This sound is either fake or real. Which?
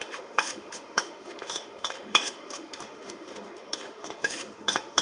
fake